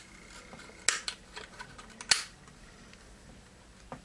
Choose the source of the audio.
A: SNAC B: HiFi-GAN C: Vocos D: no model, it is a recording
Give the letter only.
D